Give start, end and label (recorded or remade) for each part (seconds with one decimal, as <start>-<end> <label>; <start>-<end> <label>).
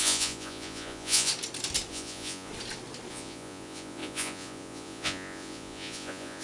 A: 0.0-1.3 remade; 1.3-1.9 recorded; 1.9-2.5 remade; 2.5-3.1 recorded; 3.1-6.4 remade